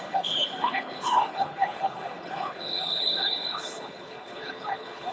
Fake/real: fake